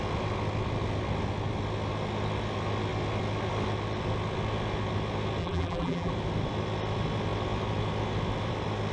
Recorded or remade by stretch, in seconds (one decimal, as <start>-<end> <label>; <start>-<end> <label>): 0.0-5.4 recorded; 5.4-6.1 remade; 6.1-8.9 recorded